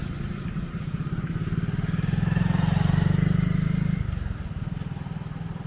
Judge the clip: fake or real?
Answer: real